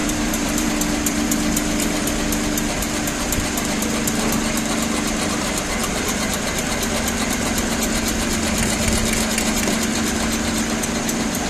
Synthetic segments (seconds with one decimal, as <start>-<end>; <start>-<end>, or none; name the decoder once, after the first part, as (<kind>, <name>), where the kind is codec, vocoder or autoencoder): 0.0-0.7 (vocoder, BigVGAN v2)